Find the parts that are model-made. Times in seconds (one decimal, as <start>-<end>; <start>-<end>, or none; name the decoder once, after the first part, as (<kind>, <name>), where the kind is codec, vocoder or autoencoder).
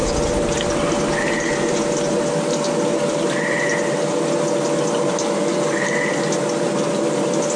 none